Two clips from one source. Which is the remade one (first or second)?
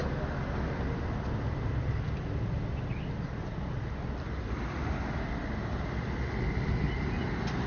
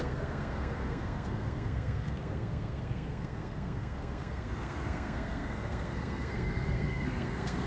second